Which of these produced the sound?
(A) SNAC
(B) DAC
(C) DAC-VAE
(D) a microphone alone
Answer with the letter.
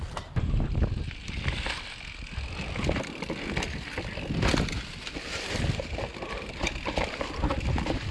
D